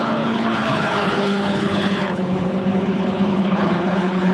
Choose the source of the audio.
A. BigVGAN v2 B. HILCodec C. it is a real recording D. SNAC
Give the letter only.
B